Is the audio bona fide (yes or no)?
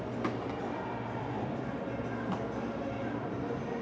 yes